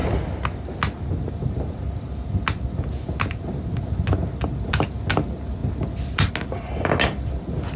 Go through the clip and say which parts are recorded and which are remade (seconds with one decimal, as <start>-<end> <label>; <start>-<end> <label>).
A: 0.0-7.8 recorded